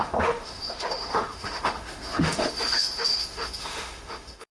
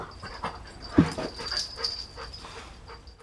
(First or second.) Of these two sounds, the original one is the second